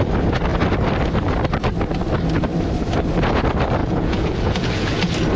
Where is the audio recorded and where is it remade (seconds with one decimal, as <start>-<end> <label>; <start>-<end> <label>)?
0.0-3.8 recorded; 3.8-5.0 remade; 5.0-5.4 recorded